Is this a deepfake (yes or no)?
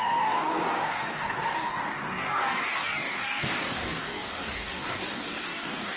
yes